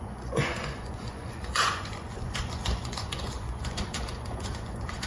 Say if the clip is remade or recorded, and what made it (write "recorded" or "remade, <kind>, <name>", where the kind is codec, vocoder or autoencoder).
remade, vocoder, Vocos